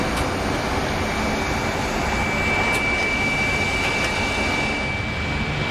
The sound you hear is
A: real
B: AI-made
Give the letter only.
A